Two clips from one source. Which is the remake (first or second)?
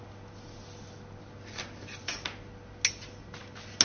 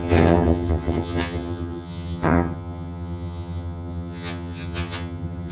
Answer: second